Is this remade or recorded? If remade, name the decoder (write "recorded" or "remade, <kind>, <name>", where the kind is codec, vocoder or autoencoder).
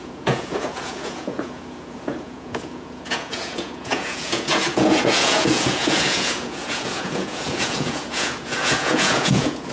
remade, vocoder, Vocos